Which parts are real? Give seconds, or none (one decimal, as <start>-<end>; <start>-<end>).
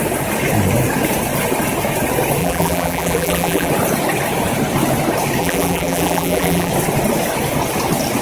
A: 0.0-2.4; 3.7-5.4; 6.7-8.2